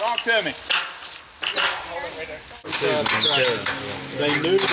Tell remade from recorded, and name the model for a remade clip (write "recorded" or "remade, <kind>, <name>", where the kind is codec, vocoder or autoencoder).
recorded